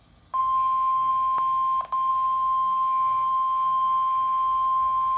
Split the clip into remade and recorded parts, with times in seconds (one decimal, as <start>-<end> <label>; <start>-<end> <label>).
0.0-0.4 recorded; 0.4-1.1 remade; 1.1-2.1 recorded; 2.1-5.2 remade